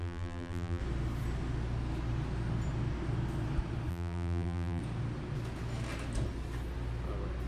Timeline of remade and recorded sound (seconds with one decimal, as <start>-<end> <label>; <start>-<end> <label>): 0.0-0.8 remade; 0.8-3.9 recorded; 3.9-4.8 remade; 4.8-7.5 recorded